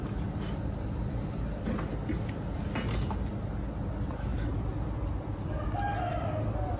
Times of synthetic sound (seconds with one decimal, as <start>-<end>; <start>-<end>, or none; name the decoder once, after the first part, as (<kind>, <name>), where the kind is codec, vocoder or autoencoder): none